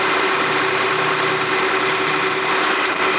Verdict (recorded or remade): recorded